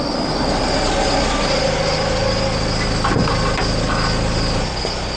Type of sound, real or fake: real